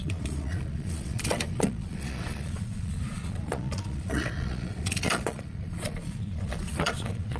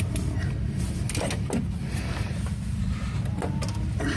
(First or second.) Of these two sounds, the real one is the second